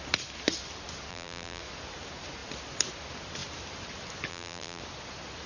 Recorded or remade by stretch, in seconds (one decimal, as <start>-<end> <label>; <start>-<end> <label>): 0.0-1.1 recorded; 1.1-1.6 remade; 1.6-4.3 recorded; 4.3-4.8 remade; 4.8-5.5 recorded